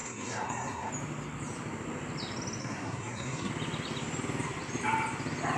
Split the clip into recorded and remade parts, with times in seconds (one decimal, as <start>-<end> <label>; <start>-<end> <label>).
0.0-0.9 remade; 0.9-2.6 recorded; 2.6-3.5 remade; 3.5-5.6 recorded